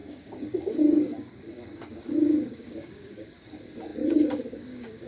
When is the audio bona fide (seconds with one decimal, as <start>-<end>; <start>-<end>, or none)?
none